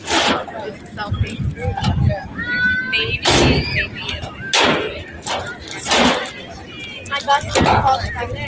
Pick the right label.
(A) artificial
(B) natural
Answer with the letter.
B